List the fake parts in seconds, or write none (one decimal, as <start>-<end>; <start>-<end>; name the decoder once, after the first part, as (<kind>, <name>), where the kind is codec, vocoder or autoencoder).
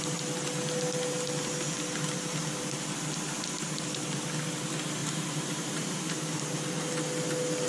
5.0-6.4 (vocoder, BigVGAN v2)